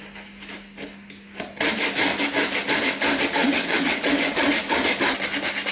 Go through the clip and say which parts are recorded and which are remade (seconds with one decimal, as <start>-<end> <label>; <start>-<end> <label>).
0.0-3.4 recorded; 3.4-4.5 remade; 4.5-5.7 recorded